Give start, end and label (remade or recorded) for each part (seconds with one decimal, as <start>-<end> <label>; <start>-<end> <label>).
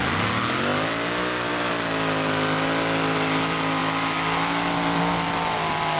0.0-6.0 recorded